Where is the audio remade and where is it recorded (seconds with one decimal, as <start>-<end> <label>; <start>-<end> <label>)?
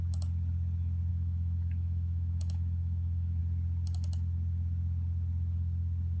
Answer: 0.0-1.1 recorded; 1.1-3.4 remade; 3.4-6.2 recorded